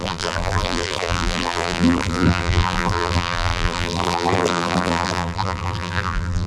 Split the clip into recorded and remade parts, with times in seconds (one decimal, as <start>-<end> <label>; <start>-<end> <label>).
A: 0.0-6.5 remade